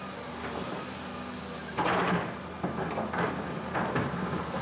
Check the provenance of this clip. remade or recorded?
recorded